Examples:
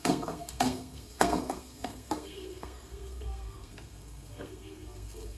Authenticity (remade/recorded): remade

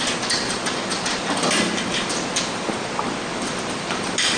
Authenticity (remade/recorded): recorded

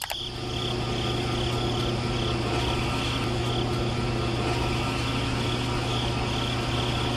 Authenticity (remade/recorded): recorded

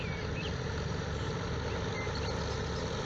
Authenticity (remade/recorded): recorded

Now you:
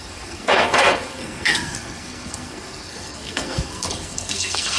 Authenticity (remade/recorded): remade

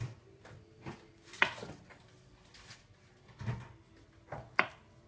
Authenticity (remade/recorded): recorded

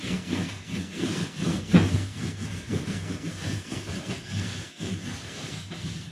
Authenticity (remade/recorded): remade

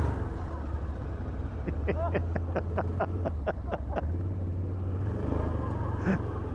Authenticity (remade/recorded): recorded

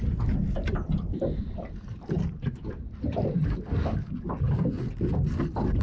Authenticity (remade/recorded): recorded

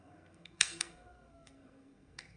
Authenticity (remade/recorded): remade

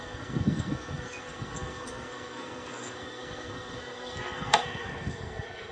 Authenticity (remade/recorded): remade